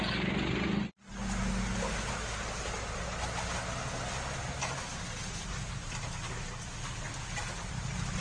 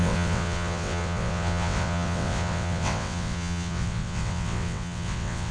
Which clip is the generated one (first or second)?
second